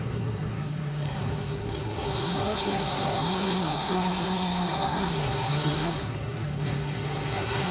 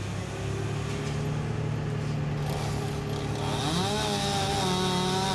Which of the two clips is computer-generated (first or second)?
first